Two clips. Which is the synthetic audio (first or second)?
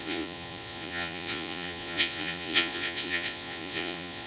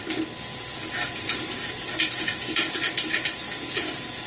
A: first